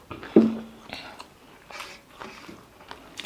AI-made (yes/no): no